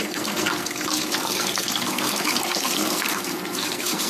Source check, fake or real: fake